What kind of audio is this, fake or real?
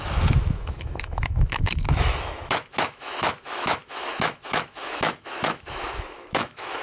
fake